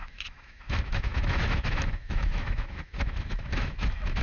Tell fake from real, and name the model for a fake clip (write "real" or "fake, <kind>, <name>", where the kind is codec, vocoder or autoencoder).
fake, autoencoder, DAC-VAE